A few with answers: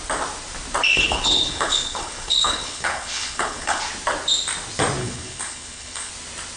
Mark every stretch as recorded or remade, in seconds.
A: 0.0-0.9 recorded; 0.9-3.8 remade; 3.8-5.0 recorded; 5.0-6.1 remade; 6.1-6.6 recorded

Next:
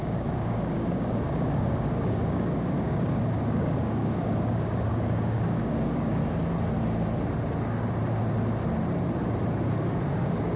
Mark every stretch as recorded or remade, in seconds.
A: 0.0-6.2 remade; 6.2-10.1 recorded; 10.1-10.6 remade

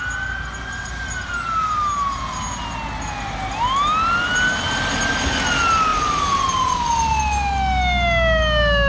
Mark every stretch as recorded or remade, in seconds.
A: 0.0-8.9 recorded

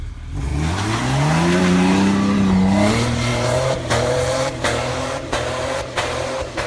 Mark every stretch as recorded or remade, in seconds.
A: 0.0-0.5 remade; 0.5-2.9 recorded; 2.9-6.7 remade

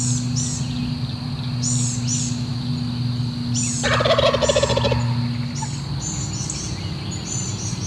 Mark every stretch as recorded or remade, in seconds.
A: 0.0-7.9 recorded

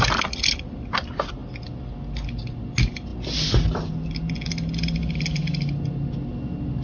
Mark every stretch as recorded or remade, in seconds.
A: 0.0-6.8 recorded

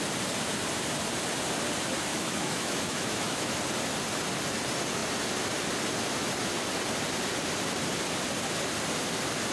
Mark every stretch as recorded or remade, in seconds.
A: 0.0-2.1 recorded; 2.1-3.6 remade; 3.6-9.5 recorded

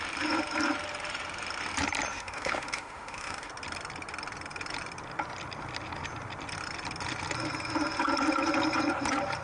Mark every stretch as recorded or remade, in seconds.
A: 0.0-2.1 recorded; 2.1-3.5 remade; 3.5-9.4 recorded